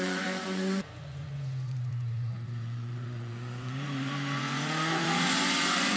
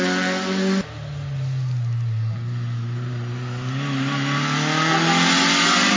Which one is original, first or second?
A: second